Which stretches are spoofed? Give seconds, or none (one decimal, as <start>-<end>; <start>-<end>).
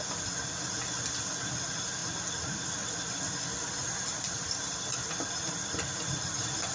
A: none